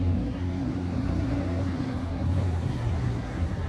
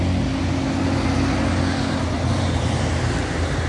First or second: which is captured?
second